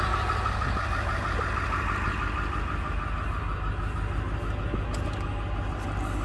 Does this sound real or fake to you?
real